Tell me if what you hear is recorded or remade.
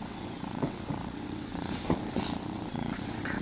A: remade